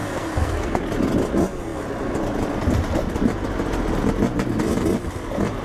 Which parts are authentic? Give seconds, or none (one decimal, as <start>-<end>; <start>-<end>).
0.8-5.6

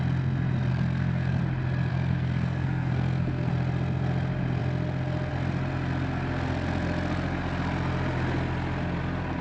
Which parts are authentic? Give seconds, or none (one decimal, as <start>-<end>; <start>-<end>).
0.0-0.7; 1.4-1.9; 3.5-9.4